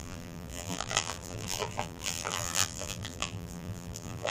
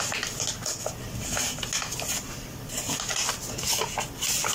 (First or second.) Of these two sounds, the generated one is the first